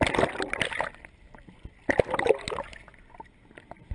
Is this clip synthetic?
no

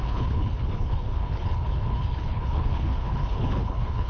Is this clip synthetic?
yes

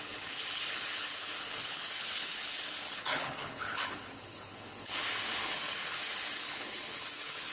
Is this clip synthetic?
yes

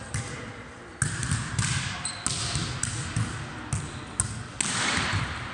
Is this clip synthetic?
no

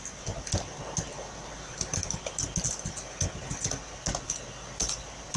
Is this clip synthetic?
no